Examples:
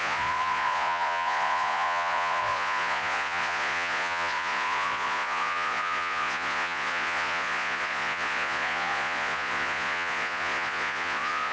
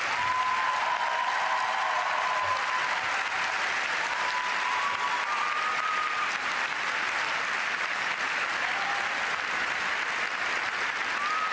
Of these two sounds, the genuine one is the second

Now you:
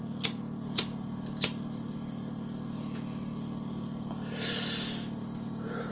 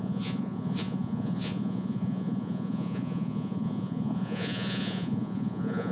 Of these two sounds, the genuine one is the first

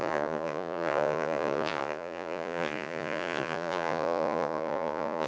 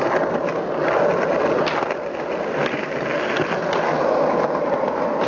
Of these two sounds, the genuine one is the second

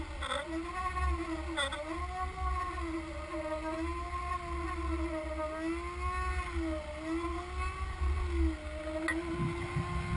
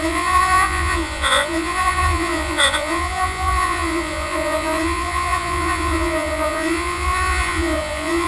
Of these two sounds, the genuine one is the first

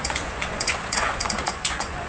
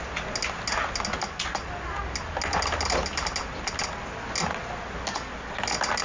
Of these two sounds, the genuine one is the second